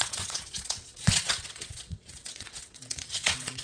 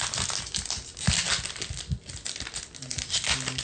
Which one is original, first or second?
second